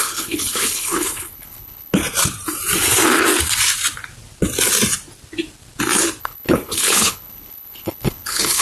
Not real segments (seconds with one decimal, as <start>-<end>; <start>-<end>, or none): 0.0-2.0; 6.2-8.6